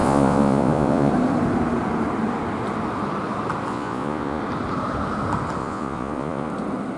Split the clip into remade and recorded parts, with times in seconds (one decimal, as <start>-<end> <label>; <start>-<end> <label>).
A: 0.0-1.1 remade; 1.1-3.7 recorded; 3.7-4.4 remade; 4.4-5.6 recorded; 5.6-6.5 remade; 6.5-7.0 recorded